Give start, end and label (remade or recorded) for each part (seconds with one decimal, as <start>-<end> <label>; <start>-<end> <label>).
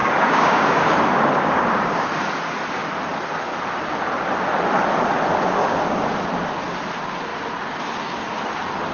0.0-2.1 remade; 2.1-5.6 recorded; 5.6-6.1 remade; 6.1-8.9 recorded